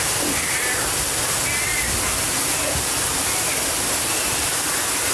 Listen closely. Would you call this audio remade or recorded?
recorded